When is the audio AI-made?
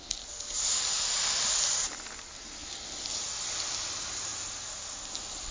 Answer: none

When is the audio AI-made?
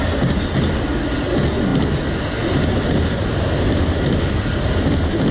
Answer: none